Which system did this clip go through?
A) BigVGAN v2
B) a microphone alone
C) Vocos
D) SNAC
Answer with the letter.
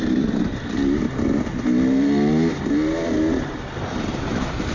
B